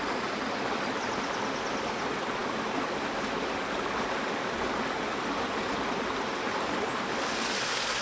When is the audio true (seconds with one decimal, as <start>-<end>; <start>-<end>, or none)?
0.0-8.0